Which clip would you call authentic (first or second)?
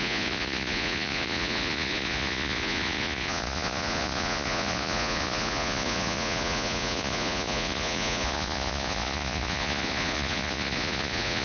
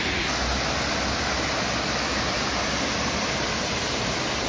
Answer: second